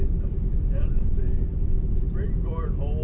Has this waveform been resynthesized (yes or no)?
no